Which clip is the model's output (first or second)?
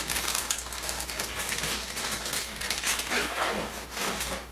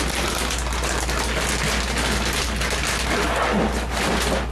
first